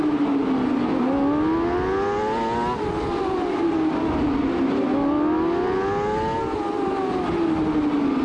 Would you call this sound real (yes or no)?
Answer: yes